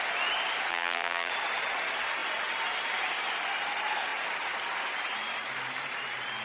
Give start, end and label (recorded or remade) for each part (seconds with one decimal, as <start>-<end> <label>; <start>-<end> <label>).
0.0-0.7 recorded; 0.7-1.3 remade; 1.3-6.4 recorded